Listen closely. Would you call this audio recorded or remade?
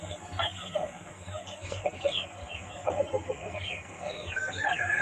remade